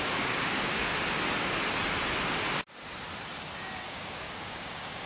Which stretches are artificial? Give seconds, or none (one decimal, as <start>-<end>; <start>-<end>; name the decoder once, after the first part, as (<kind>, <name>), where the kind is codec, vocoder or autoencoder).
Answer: 0.0-0.9 (codec, DAC); 3.9-5.1